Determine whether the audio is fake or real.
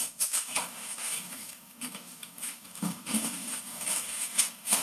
fake